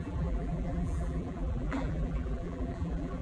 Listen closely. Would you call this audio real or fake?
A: fake